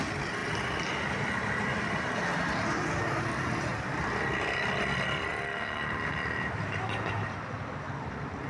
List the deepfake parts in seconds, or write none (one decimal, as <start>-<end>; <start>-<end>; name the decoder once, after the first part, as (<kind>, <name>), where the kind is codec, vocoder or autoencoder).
none